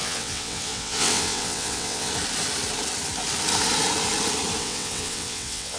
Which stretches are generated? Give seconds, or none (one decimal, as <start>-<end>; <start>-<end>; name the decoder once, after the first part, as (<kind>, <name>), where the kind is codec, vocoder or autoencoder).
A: 0.0-2.1 (vocoder, WaveNeXt); 4.6-5.8